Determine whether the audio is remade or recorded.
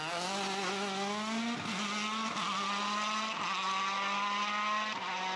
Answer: recorded